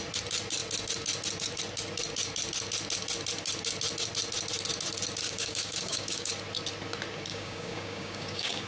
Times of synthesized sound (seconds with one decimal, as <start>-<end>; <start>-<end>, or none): 5.2-6.3; 7.3-8.7